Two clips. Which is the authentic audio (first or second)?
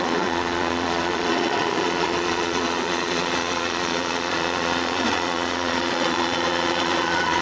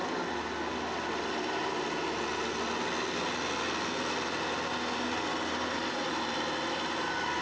second